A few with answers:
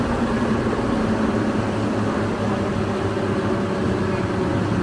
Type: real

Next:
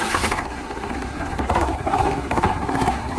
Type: fake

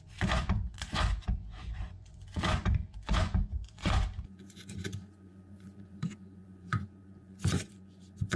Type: fake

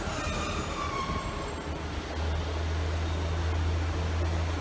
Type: real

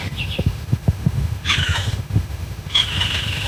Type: fake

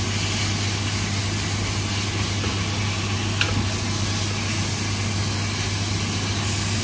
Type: real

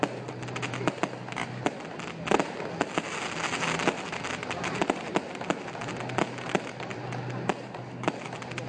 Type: real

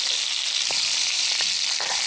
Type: real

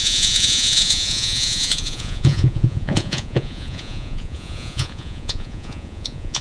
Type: fake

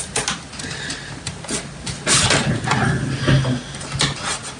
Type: real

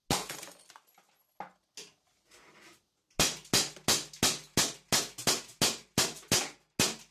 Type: real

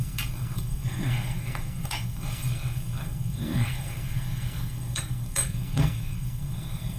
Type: fake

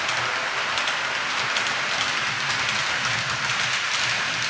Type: real